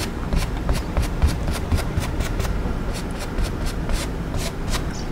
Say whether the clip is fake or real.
fake